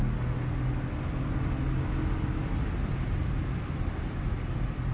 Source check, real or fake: real